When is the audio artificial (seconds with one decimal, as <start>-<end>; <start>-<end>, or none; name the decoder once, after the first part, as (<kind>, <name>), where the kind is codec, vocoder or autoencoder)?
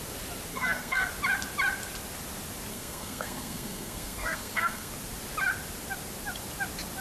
0.5-1.1 (codec, SNAC); 2.7-4.9